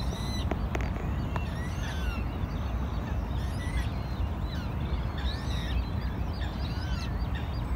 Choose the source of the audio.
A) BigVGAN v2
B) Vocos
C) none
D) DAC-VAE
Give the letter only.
C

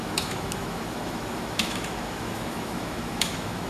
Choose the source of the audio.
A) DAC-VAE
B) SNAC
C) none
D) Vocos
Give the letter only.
A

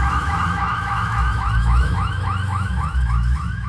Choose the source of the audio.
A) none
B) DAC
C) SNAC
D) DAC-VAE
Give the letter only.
D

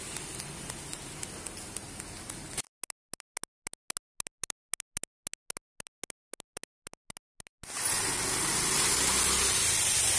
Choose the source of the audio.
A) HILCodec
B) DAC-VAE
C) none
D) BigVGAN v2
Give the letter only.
C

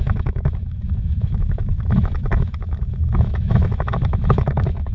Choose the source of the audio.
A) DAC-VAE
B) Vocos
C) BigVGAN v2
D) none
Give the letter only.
A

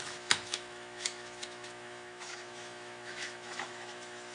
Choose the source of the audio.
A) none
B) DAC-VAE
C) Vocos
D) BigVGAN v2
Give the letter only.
B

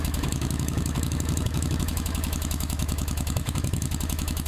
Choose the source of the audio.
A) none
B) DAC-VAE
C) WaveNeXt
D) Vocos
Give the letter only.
B